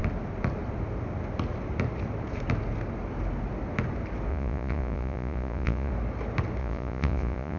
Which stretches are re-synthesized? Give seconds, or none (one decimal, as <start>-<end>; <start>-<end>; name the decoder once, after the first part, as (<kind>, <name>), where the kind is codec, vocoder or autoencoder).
4.3-5.9 (vocoder, Vocos); 6.6-7.6